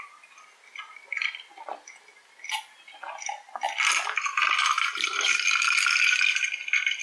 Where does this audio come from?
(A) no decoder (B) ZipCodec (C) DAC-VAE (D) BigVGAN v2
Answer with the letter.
D